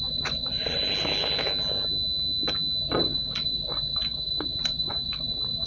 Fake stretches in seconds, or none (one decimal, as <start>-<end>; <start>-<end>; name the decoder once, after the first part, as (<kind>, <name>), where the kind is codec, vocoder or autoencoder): 0.0-0.8 (vocoder, Vocos); 2.8-5.7